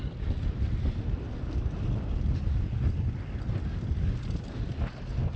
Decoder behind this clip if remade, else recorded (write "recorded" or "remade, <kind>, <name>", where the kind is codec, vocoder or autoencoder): recorded